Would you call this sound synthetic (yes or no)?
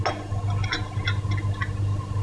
no